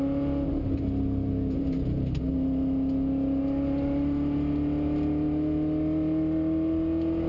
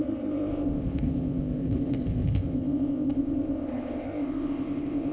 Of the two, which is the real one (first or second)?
first